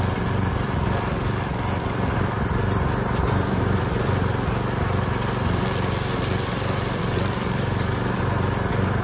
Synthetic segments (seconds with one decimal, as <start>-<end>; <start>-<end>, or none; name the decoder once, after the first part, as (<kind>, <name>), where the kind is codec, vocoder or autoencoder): 0.0-4.3 (vocoder, BigVGAN v2); 6.3-9.0